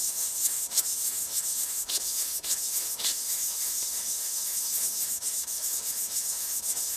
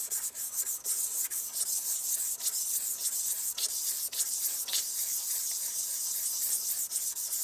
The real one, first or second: second